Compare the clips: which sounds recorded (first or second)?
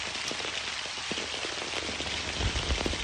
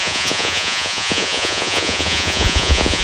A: first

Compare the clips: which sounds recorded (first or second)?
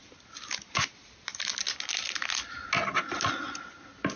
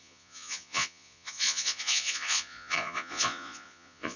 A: first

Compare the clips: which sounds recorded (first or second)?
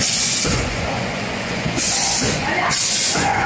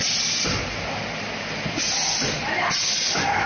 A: second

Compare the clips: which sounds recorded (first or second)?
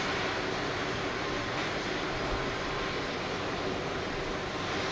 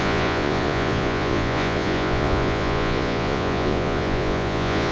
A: first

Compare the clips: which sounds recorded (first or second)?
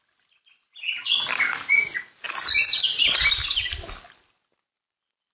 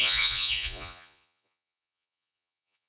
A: first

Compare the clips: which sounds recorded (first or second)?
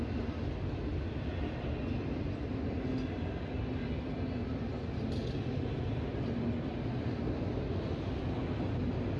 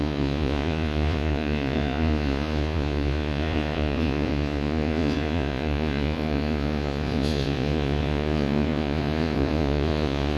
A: first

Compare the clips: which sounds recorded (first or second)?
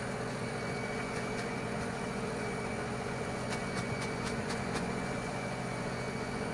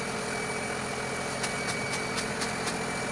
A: second